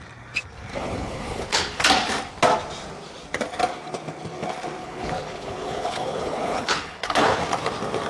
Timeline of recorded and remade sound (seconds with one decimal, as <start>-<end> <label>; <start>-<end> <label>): 0.0-0.7 recorded; 0.7-1.8 remade; 1.8-4.8 recorded; 4.8-7.4 remade; 7.4-8.1 recorded